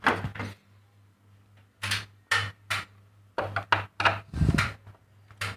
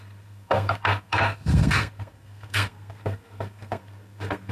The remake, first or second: second